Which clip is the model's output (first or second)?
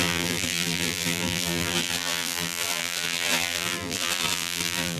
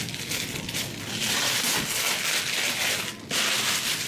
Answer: first